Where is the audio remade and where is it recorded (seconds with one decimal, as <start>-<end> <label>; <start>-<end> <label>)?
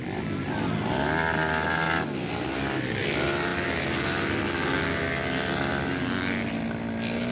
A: 0.0-7.3 recorded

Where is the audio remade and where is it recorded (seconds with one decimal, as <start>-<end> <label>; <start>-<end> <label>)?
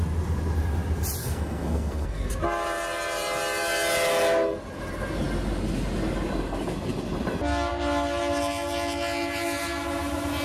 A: 0.0-1.2 recorded; 1.2-2.3 remade; 2.3-10.4 recorded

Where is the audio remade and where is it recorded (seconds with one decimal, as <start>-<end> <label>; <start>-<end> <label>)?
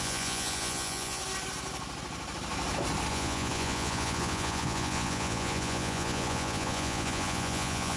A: 0.0-1.2 remade; 1.2-3.1 recorded; 3.1-8.0 remade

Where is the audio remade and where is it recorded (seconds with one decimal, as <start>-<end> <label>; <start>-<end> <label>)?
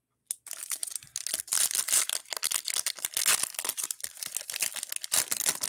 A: 0.0-5.7 recorded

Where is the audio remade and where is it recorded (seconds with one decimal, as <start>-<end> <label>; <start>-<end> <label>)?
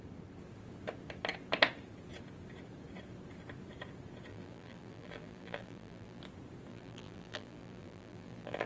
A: 0.0-4.3 recorded; 4.3-6.2 remade; 6.2-6.7 recorded; 6.7-8.7 remade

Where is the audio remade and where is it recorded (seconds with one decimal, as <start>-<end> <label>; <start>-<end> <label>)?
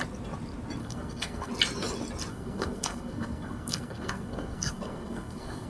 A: 0.0-0.8 recorded; 0.8-1.5 remade; 1.5-2.3 recorded; 2.3-5.7 remade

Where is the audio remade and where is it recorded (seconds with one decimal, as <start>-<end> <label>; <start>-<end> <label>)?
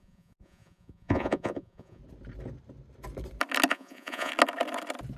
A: 0.0-2.0 remade; 2.0-3.7 recorded; 3.7-4.3 remade; 4.3-5.2 recorded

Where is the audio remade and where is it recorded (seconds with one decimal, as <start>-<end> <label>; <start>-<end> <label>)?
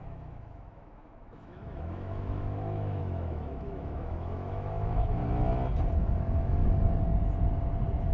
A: 0.0-5.2 remade; 5.2-6.0 recorded; 6.0-6.6 remade; 6.6-8.1 recorded